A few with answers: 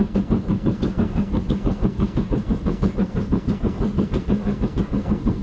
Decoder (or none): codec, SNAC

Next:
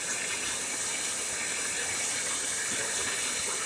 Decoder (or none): none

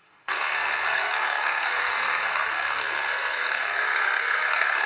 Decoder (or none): codec, SNAC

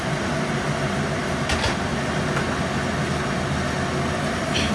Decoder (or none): none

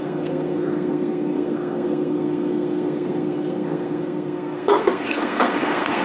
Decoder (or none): codec, SNAC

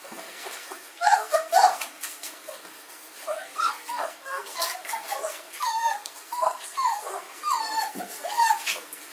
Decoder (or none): codec, SNAC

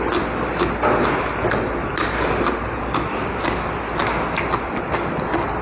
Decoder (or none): none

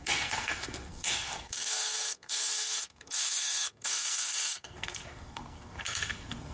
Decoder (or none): codec, SNAC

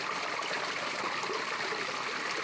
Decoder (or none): none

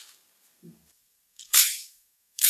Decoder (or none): codec, SNAC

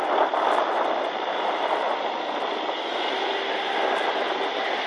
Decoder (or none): none